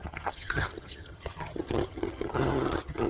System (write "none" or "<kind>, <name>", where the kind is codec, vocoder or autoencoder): vocoder, HiFi-GAN